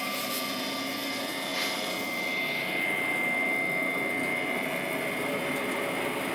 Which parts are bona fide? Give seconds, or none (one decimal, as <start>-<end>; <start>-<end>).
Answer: 0.0-6.3